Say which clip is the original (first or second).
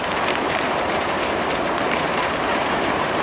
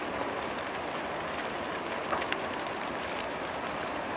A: second